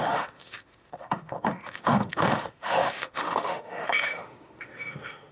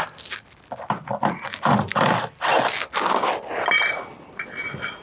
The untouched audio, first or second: second